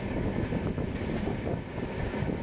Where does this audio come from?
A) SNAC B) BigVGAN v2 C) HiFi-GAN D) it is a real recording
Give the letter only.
D